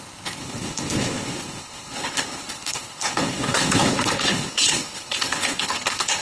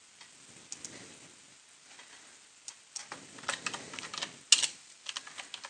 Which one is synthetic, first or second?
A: first